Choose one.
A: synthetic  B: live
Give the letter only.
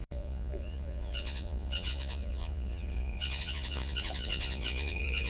A